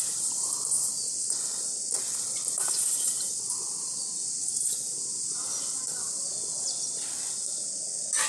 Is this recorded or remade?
recorded